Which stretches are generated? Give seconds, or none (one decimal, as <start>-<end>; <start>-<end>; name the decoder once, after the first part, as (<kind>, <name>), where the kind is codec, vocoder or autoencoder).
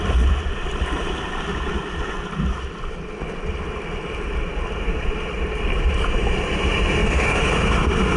7.0-7.5 (codec, DAC)